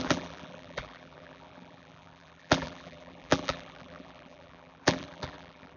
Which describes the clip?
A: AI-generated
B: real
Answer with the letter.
A